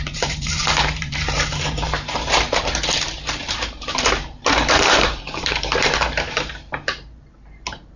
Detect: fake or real fake